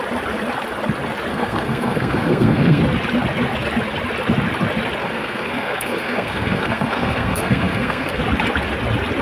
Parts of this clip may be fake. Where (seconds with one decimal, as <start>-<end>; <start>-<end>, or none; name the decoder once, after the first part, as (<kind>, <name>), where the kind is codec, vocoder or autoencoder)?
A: 1.3-2.8 (codec, SNAC); 5.0-8.2